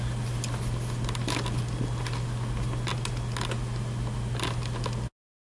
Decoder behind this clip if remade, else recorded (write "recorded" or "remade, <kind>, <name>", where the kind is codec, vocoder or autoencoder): recorded